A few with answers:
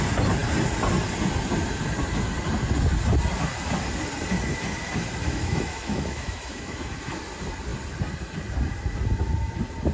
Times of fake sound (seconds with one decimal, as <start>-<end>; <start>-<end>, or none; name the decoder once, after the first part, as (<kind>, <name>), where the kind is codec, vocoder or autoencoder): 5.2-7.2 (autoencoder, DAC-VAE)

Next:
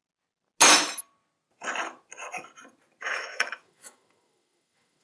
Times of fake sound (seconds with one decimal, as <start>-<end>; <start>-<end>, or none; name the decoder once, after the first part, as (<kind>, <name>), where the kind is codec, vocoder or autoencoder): 3.0-5.0 (autoencoder, DAC-VAE)

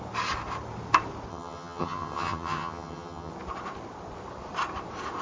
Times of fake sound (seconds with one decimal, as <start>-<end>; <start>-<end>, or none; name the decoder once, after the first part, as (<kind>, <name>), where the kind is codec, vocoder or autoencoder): 1.3-3.3 (vocoder, HiFi-GAN)

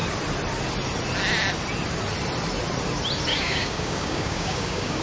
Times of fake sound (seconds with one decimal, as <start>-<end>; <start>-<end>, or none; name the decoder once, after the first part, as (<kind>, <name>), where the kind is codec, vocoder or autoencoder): 3.3-5.0 (codec, DAC)

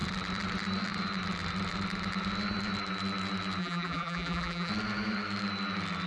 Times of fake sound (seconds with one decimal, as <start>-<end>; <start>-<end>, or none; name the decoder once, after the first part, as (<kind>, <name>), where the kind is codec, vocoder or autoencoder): 3.6-4.7 (vocoder, BigVGAN v2)

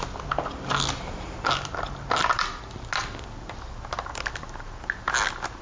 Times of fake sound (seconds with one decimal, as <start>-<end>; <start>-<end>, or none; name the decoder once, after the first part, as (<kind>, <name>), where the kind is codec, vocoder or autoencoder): none

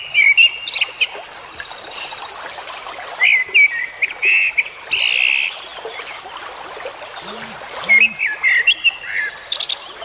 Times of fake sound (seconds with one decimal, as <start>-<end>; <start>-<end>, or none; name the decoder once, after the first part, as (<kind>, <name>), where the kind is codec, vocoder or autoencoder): none